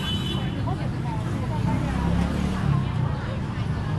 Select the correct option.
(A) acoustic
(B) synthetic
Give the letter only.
A